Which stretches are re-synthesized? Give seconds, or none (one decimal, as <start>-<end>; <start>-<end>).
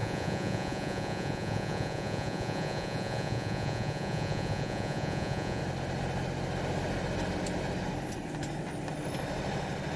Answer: 0.0-5.6